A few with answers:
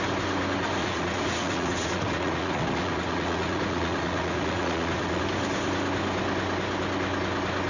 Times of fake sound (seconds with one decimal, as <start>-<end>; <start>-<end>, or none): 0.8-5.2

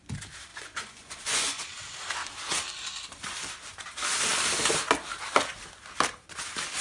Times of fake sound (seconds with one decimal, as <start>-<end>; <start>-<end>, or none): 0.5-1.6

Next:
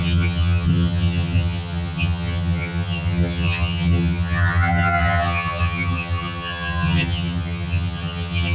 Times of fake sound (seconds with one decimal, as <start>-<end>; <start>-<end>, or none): 0.0-8.5